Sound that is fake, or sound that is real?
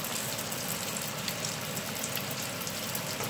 real